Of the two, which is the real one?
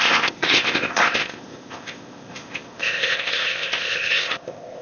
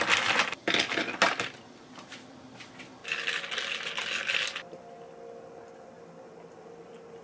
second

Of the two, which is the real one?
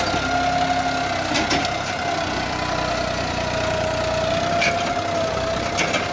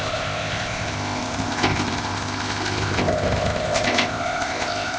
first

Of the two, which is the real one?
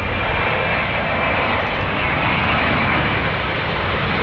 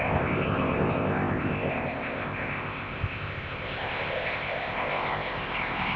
first